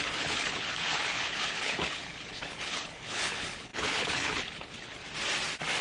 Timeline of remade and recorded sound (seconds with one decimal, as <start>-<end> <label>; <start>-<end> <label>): 0.0-5.0 remade; 5.0-5.8 recorded